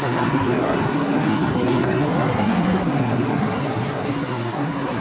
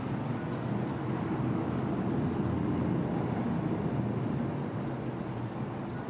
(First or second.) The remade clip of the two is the first